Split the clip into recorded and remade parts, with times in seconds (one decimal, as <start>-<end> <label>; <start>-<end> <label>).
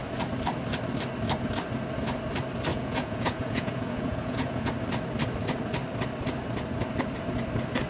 0.0-2.7 recorded; 2.7-4.7 remade; 4.7-7.9 recorded